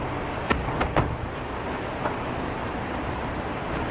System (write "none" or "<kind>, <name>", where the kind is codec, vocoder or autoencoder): none